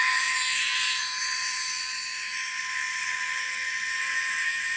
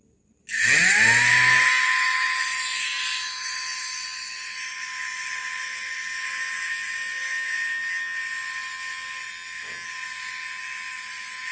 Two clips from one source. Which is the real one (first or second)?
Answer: second